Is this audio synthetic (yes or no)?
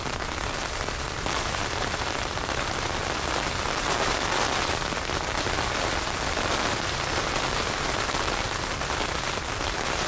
no